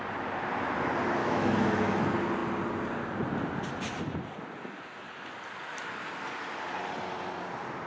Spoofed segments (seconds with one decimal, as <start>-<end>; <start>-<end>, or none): 1.2-2.0